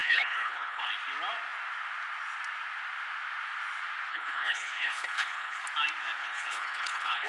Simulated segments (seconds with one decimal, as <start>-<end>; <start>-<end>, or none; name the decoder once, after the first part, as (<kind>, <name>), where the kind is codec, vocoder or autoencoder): 0.0-0.9 (codec, HILCodec); 4.1-5.6; 6.2-7.3